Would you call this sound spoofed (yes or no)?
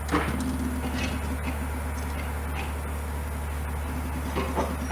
no